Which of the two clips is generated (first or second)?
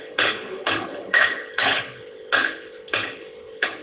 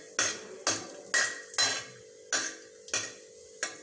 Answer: first